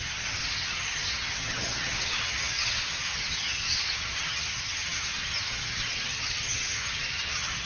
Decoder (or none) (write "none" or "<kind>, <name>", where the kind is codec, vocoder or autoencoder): vocoder, HiFi-GAN